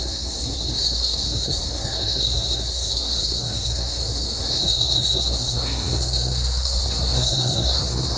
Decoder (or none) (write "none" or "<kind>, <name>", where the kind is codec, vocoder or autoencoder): codec, SNAC